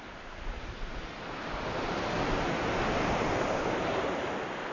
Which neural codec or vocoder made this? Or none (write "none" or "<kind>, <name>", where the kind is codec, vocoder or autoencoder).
none